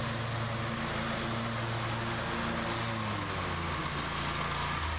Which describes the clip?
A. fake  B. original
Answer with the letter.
B